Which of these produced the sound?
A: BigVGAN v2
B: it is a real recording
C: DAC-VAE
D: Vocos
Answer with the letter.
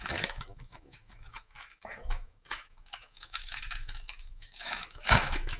C